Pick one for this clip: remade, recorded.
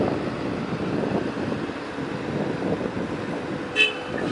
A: recorded